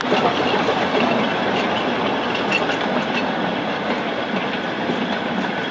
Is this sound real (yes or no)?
yes